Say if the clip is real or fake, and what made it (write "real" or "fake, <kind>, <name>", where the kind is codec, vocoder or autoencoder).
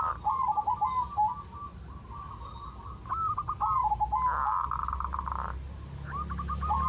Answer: real